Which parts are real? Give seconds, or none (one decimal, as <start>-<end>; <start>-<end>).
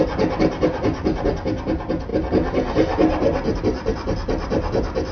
0.0-5.1